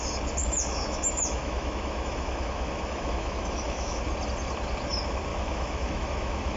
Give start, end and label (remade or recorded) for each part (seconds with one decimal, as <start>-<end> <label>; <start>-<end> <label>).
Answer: 0.0-0.4 recorded; 0.4-4.0 remade; 4.0-5.3 recorded; 5.3-6.6 remade